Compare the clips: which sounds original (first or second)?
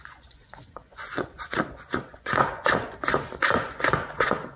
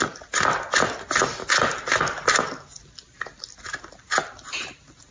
second